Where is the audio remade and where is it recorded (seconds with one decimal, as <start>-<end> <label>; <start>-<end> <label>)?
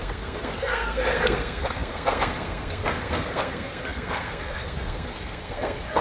0.0-6.0 remade